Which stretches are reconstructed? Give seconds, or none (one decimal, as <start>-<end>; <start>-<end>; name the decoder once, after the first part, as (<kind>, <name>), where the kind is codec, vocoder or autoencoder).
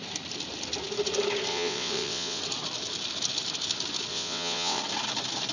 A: 1.5-2.4 (vocoder, WaveNeXt); 4.1-4.8